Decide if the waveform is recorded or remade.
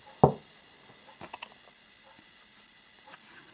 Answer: recorded